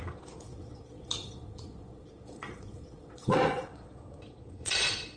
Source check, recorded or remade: remade